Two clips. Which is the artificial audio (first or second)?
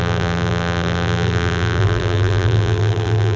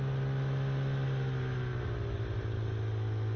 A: first